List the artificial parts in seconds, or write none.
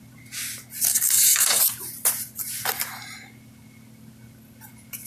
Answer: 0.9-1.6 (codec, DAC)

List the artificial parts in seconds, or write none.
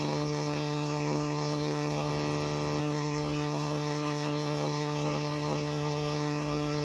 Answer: 0.0-2.1 (codec, SNAC); 2.8-6.8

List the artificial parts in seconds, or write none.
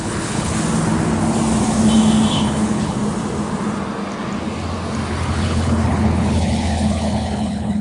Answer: 0.0-0.5 (codec, HILCodec); 2.3-3.0; 5.1-7.8